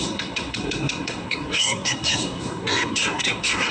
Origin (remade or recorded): remade